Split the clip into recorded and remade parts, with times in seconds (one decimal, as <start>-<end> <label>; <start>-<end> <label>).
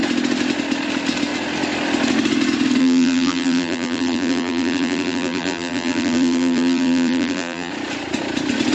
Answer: 0.0-2.8 recorded; 2.8-7.7 remade; 7.7-8.7 recorded